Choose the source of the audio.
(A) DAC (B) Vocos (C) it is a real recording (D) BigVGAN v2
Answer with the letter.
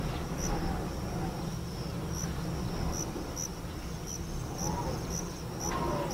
C